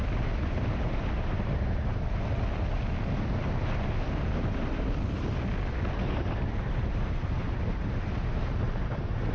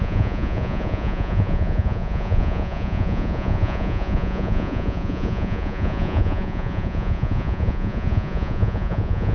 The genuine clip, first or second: first